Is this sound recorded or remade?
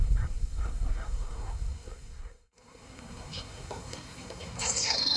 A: remade